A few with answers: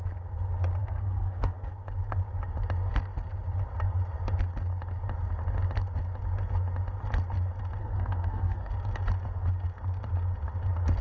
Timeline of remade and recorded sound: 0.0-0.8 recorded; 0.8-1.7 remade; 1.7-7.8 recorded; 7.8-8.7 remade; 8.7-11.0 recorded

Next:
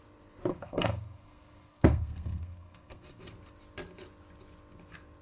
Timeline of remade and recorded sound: 0.0-0.5 recorded; 0.5-3.2 remade; 3.2-5.2 recorded